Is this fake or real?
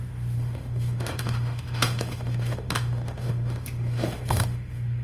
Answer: fake